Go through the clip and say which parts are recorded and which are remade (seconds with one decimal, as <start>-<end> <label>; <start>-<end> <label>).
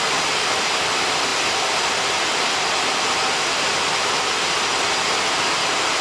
0.0-6.0 recorded